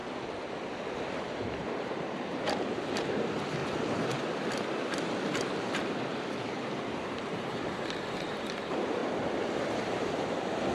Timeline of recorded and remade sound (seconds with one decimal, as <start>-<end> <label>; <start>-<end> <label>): 0.0-1.3 recorded; 1.3-3.6 remade; 3.6-6.9 recorded; 6.9-9.0 remade; 9.0-9.6 recorded; 9.6-10.7 remade

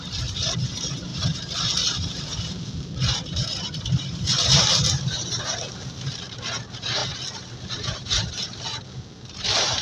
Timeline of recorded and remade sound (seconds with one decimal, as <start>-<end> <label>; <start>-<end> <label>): 0.0-7.0 remade; 7.0-7.7 recorded; 7.7-9.8 remade